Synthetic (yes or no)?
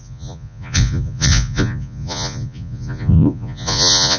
yes